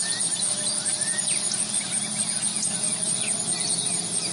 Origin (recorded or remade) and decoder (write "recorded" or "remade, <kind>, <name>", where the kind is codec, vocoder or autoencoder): recorded